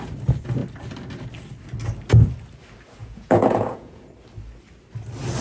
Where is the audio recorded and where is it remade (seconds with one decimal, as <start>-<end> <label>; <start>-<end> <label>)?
0.0-3.0 recorded; 3.0-4.0 remade; 4.0-5.4 recorded